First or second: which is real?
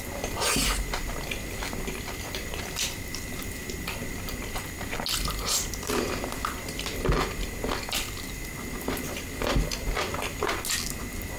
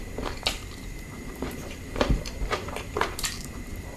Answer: first